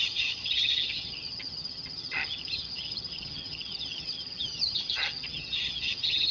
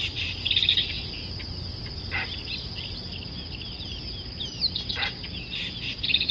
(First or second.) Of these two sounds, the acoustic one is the second